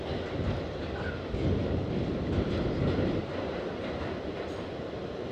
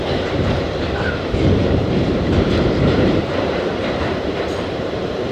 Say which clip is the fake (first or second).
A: second